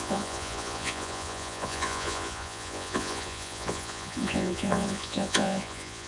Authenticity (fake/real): fake